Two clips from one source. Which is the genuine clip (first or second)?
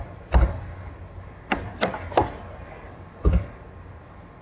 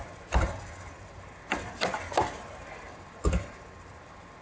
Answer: first